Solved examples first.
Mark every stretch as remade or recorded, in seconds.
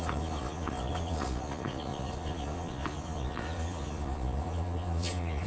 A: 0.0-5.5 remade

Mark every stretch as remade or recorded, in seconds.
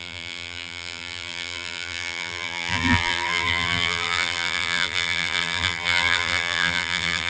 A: 0.0-7.3 remade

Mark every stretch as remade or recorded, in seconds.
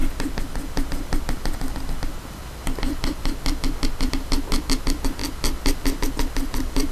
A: 0.0-6.9 recorded